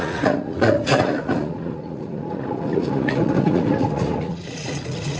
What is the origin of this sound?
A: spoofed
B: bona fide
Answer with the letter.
A